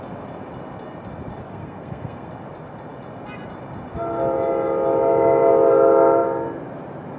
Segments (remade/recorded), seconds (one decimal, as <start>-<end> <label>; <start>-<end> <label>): 0.0-1.5 recorded; 1.5-2.3 remade; 2.3-7.2 recorded